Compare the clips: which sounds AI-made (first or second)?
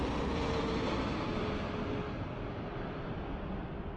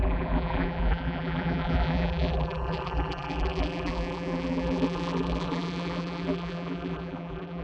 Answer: second